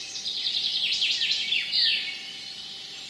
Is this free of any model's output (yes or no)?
yes